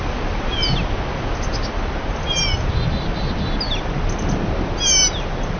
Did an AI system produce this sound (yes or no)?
no